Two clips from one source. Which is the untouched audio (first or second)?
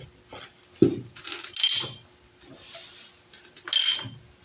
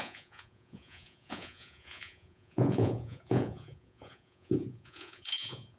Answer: first